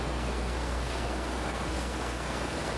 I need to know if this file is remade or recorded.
remade